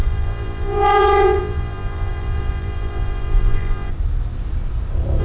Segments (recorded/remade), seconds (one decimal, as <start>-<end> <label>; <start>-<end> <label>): 0.0-3.9 remade; 3.9-5.2 recorded

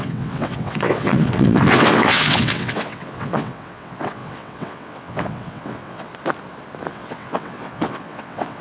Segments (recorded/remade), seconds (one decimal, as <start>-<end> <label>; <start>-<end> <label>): 0.0-6.1 remade; 6.1-6.9 recorded; 6.9-8.6 remade

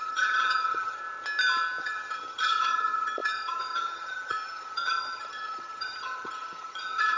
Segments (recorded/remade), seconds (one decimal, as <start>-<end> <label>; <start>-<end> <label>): 0.0-1.0 remade; 1.0-1.8 recorded; 1.8-7.2 remade

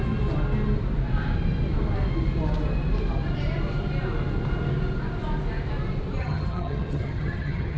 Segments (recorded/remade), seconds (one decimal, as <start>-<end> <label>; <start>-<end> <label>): 0.0-6.2 recorded; 6.2-7.8 remade